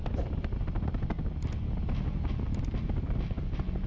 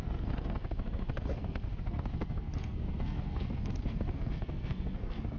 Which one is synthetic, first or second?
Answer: second